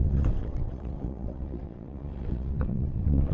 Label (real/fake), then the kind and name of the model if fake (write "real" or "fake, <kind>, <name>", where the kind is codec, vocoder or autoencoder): fake, vocoder, WaveNeXt